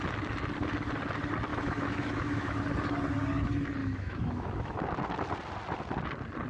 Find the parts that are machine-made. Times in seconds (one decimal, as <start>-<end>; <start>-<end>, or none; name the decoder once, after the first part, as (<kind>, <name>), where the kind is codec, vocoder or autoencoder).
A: 1.5-2.6 (autoencoder, DAC-VAE); 3.8-4.8